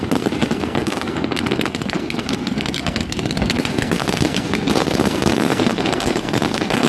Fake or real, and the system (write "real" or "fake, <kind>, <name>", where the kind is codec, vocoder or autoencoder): fake, codec, SNAC